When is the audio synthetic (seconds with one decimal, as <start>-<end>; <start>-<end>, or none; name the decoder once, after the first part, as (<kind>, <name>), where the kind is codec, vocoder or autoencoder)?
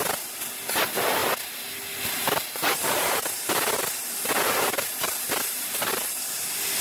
none